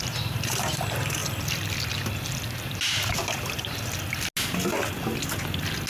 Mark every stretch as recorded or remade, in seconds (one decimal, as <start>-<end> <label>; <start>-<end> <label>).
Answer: 0.0-5.9 recorded